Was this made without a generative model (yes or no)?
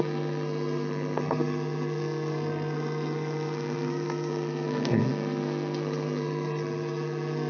no